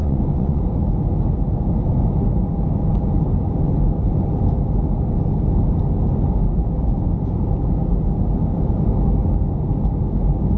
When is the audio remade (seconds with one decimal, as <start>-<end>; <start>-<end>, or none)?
0.0-0.6